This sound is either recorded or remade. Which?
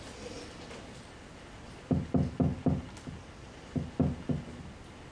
recorded